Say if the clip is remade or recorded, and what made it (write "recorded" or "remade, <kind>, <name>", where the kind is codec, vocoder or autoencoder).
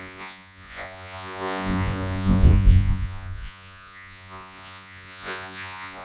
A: remade, vocoder, Vocos